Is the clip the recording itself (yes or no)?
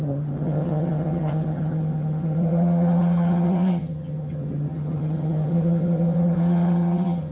no